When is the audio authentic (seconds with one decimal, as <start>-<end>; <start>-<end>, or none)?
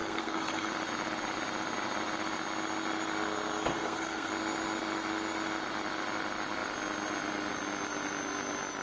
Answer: 0.7-3.7; 4.3-8.8